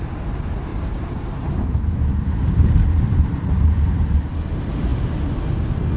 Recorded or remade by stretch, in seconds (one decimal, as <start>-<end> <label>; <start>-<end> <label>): 0.0-0.7 recorded; 0.7-4.3 remade; 4.3-6.0 recorded